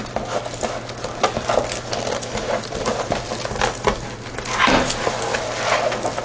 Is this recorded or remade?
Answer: recorded